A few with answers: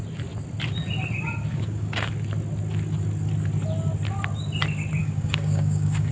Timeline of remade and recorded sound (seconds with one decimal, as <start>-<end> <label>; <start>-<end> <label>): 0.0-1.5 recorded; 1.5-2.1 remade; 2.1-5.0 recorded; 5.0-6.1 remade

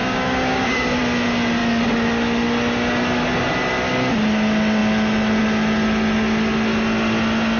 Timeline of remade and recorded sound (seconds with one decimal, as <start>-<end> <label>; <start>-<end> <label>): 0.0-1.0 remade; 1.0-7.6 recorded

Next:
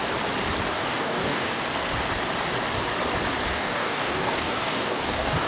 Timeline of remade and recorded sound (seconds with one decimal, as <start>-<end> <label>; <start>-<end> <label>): 0.0-0.7 recorded; 0.7-1.6 remade; 1.6-3.5 recorded; 3.5-5.5 remade

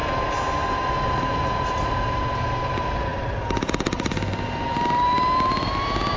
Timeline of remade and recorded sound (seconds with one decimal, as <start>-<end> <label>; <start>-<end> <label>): 0.0-6.2 recorded

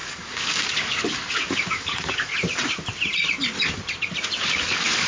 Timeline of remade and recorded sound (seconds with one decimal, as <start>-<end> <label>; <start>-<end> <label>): 0.0-2.3 remade; 2.3-4.4 recorded; 4.4-5.1 remade